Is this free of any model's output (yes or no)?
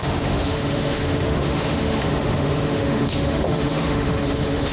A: no